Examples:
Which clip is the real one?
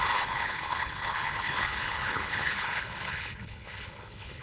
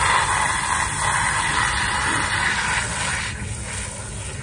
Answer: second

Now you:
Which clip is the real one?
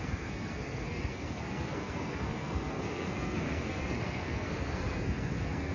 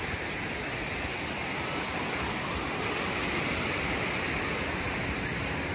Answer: second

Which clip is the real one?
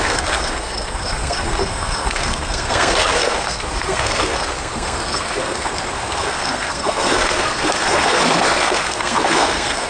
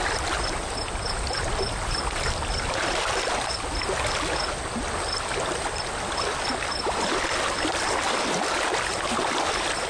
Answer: second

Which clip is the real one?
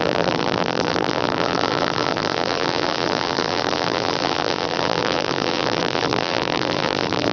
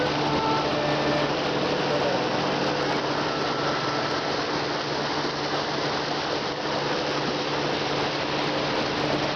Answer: second